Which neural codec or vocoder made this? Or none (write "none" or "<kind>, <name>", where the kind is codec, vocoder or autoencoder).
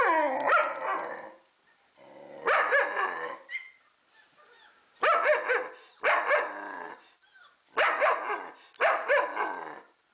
none